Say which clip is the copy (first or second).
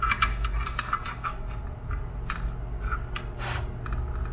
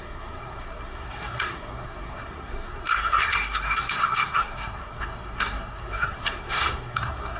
second